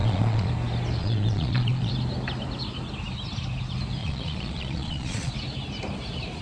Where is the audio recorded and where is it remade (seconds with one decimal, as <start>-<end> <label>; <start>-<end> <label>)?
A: 0.0-0.5 remade; 0.5-1.0 recorded; 1.0-1.9 remade; 1.9-4.0 recorded; 4.0-5.3 remade; 5.3-6.4 recorded